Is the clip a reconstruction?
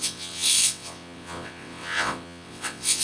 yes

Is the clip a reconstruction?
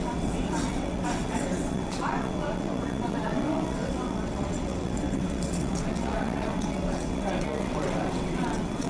yes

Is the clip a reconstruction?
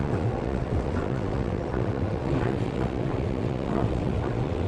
yes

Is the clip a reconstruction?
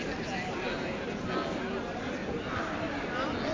no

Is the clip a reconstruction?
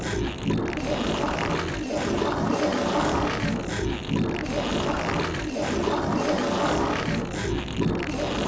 no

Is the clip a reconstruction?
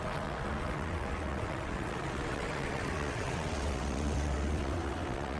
yes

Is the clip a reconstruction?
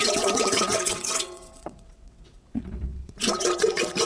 yes